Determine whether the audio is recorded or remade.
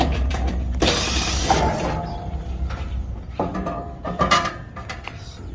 remade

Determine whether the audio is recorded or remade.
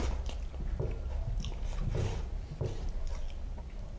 recorded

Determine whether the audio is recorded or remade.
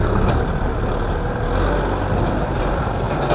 recorded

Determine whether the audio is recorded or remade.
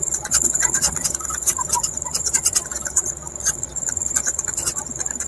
remade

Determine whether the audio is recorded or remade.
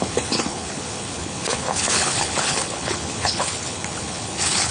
remade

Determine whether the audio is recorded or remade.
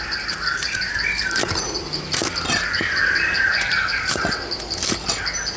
recorded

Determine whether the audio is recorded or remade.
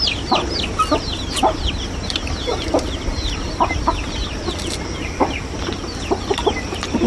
recorded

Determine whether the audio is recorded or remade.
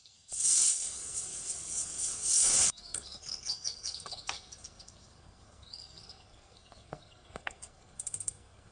remade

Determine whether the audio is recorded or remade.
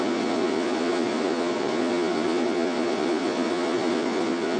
remade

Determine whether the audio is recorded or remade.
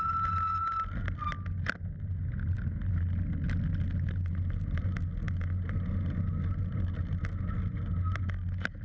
recorded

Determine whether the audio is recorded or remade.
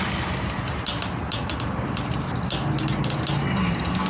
recorded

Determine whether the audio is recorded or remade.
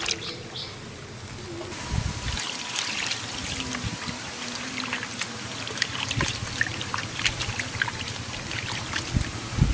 recorded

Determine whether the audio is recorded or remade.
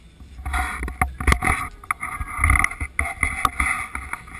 recorded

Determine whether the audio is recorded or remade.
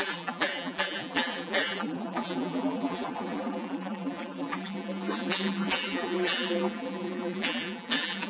remade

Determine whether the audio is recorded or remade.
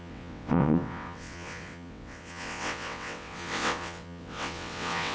remade